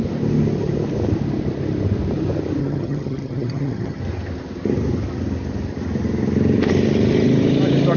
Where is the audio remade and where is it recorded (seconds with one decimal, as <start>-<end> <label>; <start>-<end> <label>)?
0.0-2.6 recorded; 2.6-4.0 remade; 4.0-8.0 recorded